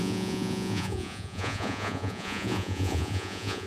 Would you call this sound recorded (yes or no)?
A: no